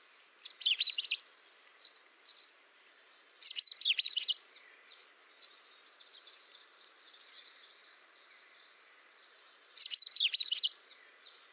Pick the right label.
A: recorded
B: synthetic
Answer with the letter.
B